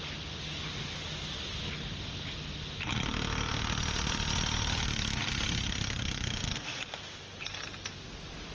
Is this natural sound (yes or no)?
yes